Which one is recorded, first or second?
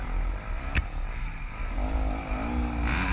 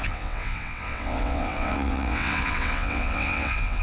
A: first